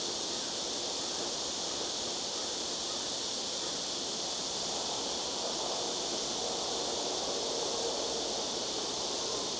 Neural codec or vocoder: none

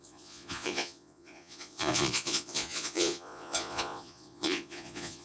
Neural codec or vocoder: vocoder, Vocos